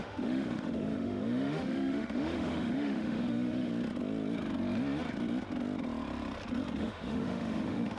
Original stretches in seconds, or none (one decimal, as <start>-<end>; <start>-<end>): 3.7-6.8